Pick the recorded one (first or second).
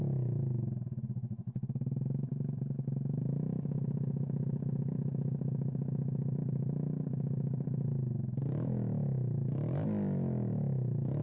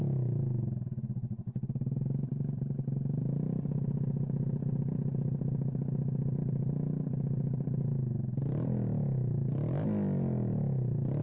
second